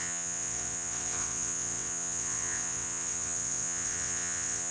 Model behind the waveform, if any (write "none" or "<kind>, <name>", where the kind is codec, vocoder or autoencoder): vocoder, WaveNeXt